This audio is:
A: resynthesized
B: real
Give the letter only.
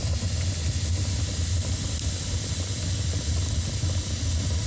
B